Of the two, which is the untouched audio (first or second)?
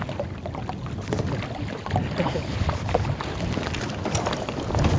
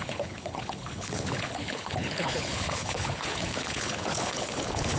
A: first